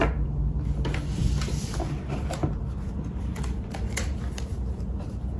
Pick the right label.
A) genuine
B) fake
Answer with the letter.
B